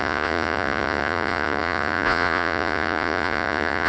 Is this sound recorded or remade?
remade